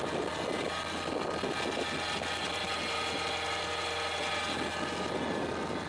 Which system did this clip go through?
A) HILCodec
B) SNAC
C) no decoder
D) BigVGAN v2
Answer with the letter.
C